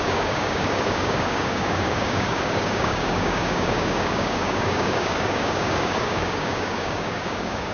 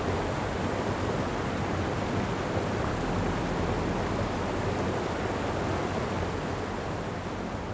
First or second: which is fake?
first